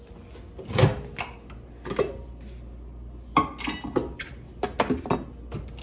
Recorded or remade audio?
recorded